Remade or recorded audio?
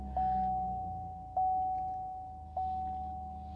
recorded